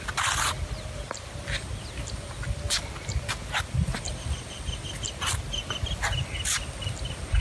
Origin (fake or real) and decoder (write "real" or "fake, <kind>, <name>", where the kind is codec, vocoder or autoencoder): real